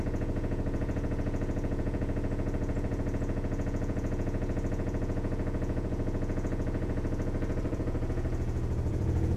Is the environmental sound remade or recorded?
remade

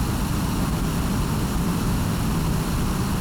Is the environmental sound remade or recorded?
recorded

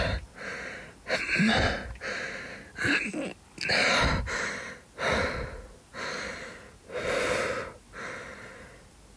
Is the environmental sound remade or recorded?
recorded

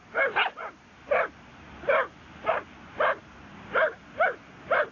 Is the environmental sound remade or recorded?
recorded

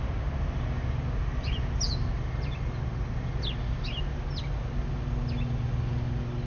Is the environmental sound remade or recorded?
recorded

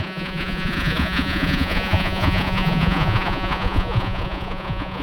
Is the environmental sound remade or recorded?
remade